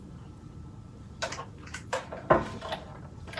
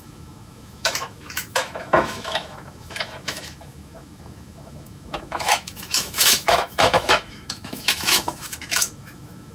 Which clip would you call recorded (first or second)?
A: first